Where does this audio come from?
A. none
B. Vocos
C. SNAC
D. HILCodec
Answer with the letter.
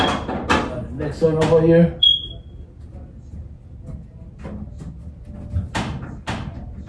A